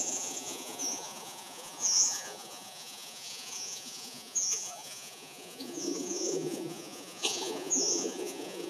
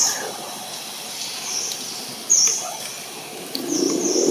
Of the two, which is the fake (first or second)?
first